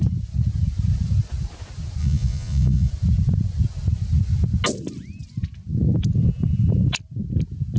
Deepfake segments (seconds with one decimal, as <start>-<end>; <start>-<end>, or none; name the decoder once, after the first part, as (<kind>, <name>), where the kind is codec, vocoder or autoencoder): 2.0-2.9 (vocoder, Vocos)